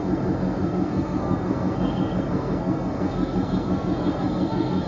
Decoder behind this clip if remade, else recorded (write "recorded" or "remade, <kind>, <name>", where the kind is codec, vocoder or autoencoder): remade, codec, SNAC